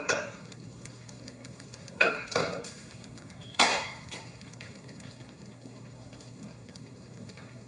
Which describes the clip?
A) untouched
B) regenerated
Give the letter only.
B